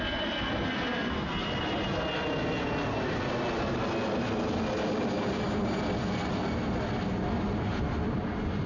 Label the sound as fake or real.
real